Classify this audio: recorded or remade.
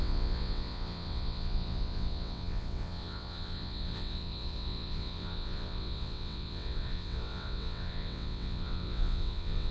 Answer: remade